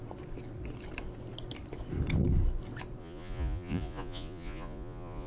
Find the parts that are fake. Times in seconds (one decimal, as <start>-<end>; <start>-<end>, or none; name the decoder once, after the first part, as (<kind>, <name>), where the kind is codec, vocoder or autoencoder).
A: 3.0-5.3 (vocoder, Vocos)

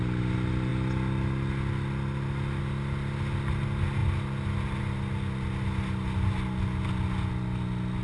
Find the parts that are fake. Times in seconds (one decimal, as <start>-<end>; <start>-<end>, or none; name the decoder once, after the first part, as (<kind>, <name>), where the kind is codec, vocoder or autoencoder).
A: none

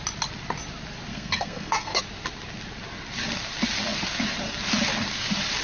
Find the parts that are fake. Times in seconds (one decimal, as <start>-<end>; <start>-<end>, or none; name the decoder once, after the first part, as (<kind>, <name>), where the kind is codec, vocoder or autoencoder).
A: 1.1-2.0 (codec, SNAC)

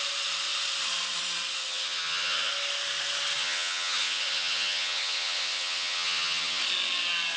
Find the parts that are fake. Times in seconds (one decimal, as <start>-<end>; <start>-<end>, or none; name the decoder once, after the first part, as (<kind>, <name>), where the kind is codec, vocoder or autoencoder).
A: 1.6-2.5 (vocoder, HiFi-GAN); 3.4-6.6

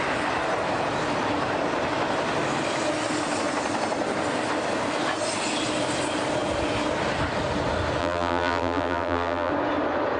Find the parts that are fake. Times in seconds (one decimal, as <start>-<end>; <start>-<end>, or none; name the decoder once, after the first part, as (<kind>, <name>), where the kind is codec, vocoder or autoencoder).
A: 8.0-9.5 (vocoder, BigVGAN v2)

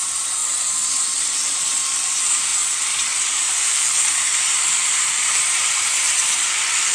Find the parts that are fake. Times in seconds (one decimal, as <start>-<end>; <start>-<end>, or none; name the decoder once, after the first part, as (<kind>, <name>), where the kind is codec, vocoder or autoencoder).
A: 0.0-0.4 (vocoder, BigVGAN v2); 1.2-6.9

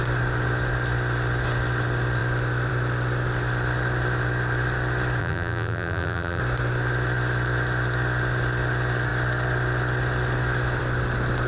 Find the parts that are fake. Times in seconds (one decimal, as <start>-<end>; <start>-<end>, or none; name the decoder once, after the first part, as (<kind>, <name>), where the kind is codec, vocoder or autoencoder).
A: 5.2-6.4 (vocoder, BigVGAN v2)